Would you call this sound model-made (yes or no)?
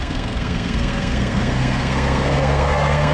yes